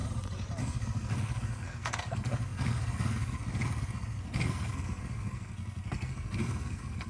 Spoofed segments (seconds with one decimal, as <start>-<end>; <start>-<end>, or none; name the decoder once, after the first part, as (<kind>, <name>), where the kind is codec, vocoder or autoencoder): 0.6-7.1 (codec, SNAC)